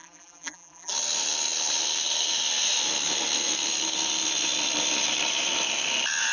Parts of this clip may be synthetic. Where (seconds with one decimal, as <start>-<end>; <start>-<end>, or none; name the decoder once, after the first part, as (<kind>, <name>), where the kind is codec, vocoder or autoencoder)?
0.0-0.9 (vocoder, BigVGAN v2)